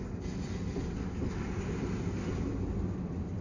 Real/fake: real